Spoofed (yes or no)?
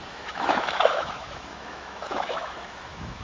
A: yes